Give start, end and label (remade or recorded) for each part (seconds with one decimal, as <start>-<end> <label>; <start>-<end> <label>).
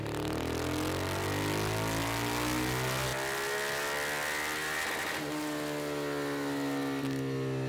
0.0-7.7 recorded